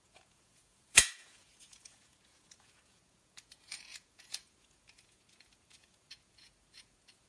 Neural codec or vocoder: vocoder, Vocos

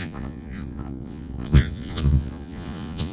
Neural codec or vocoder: vocoder, Vocos